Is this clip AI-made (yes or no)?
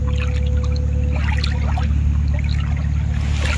no